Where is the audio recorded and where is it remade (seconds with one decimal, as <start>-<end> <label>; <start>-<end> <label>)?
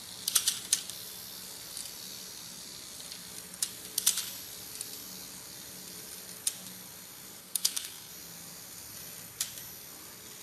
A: 0.0-7.4 recorded; 7.4-8.1 remade; 8.1-10.4 recorded